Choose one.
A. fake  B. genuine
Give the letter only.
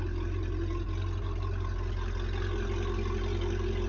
B